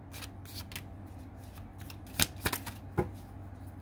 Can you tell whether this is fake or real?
real